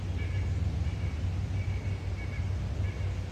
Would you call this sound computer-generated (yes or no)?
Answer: no